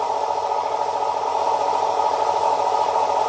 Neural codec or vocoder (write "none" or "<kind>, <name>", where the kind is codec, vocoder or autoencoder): none